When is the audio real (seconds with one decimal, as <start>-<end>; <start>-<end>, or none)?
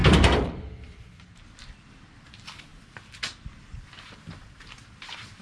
0.0-1.1